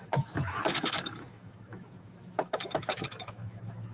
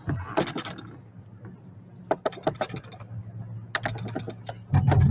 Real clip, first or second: second